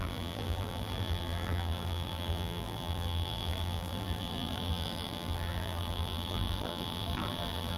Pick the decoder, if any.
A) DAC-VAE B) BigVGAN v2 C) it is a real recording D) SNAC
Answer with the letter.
B